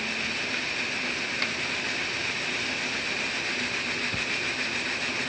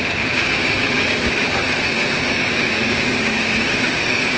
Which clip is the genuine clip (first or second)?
first